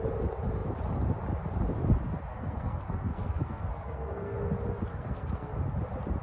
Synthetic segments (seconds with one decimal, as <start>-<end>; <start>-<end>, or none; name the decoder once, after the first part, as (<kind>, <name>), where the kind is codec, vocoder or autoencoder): 2.3-4.5 (codec, SNAC); 4.9-5.5